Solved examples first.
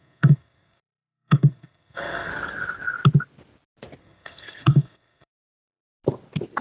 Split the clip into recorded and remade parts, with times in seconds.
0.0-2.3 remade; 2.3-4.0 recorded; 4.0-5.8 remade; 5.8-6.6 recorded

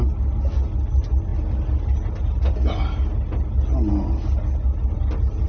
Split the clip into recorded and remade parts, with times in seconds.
0.0-5.5 recorded

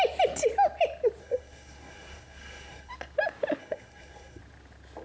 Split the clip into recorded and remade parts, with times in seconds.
0.0-1.2 recorded; 1.2-2.9 remade; 2.9-3.6 recorded; 3.6-4.4 remade; 4.4-5.0 recorded

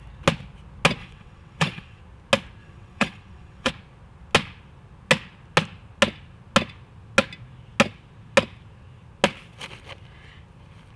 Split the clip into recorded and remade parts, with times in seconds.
0.0-1.0 recorded; 1.0-2.0 remade; 2.0-2.6 recorded; 2.6-3.7 remade; 3.7-11.0 recorded

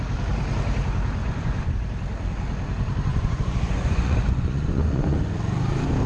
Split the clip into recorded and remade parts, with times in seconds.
0.0-1.2 recorded; 1.2-1.7 remade; 1.7-3.1 recorded; 3.1-5.2 remade; 5.2-6.1 recorded